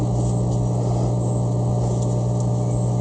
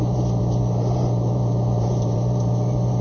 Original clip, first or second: first